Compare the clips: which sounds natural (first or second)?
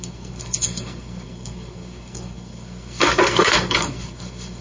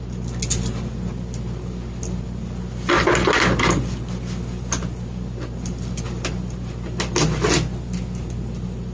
second